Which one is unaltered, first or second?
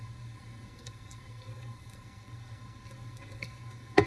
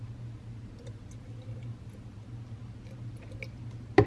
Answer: second